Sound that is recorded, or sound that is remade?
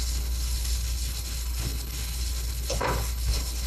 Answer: remade